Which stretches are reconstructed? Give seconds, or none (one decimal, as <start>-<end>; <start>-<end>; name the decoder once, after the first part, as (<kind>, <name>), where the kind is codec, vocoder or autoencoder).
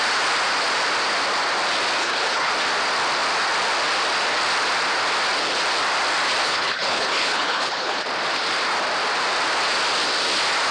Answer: 2.0-2.5 (codec, HILCodec); 6.4-8.0